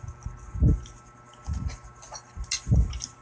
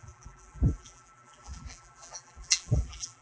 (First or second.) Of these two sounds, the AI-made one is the second